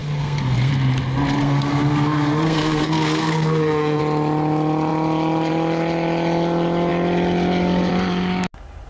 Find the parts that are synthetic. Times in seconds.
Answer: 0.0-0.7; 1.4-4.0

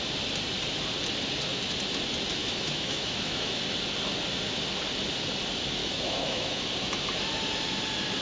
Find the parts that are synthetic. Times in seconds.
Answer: 2.4-3.6; 5.8-6.6

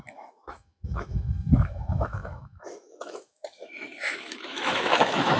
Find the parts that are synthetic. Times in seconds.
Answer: 0.0-5.4

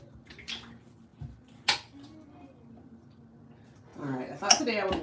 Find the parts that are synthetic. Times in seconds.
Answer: none

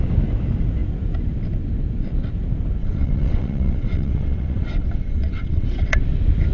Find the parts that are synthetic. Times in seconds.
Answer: 2.8-6.0